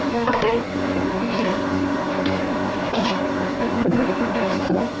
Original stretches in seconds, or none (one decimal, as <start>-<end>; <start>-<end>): none